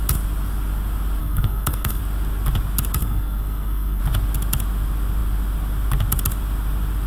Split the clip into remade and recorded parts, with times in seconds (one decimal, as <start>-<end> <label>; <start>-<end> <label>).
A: 0.0-1.2 recorded; 1.2-2.0 remade; 2.0-3.0 recorded; 3.0-4.0 remade; 4.0-7.1 recorded